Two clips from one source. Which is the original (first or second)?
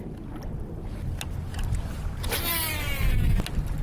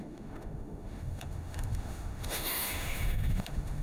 first